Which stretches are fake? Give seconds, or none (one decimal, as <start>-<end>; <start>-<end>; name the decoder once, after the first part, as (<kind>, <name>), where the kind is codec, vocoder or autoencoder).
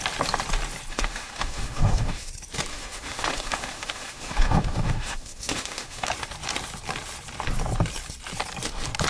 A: 0.9-2.3 (autoencoder, DAC-VAE); 2.7-6.1